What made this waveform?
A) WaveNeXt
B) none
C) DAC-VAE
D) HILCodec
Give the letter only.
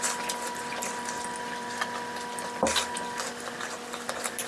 B